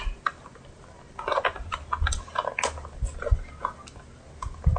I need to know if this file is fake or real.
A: real